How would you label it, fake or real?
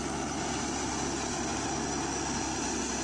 real